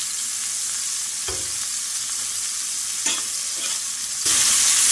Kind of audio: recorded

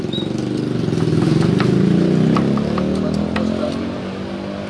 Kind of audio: recorded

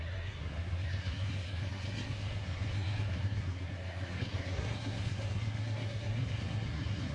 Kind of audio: remade